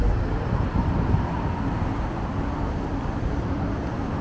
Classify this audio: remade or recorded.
recorded